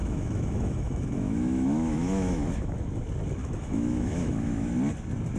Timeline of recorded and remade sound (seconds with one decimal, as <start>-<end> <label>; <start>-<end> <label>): 0.0-3.0 remade; 3.0-3.4 recorded; 3.4-4.7 remade; 4.7-5.4 recorded